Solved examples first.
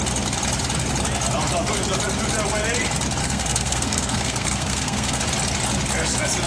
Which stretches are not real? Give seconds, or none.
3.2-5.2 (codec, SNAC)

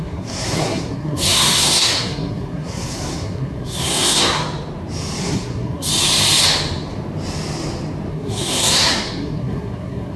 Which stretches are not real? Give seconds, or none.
0.0-4.4 (codec, SNAC); 5.2-5.9; 8.1-10.2